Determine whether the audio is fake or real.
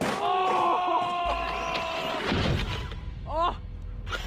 real